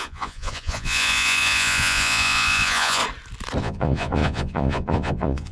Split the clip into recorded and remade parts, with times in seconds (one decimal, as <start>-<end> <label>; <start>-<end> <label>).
0.0-3.0 remade; 3.0-3.6 recorded; 3.6-5.5 remade